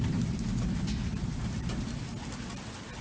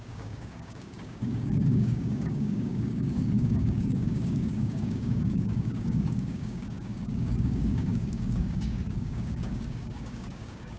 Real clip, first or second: first